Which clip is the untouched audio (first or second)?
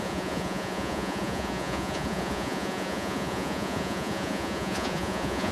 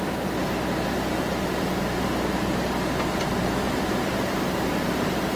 second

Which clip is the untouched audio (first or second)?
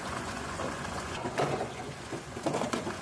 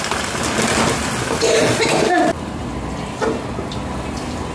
second